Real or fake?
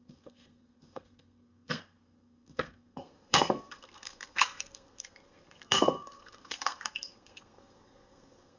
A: fake